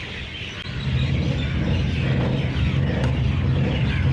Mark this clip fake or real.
real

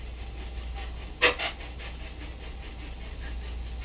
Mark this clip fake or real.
real